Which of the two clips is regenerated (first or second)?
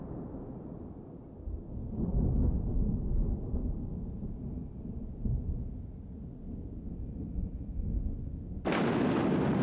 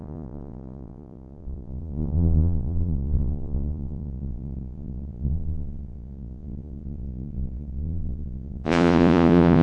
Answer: second